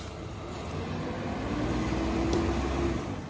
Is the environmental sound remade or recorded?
recorded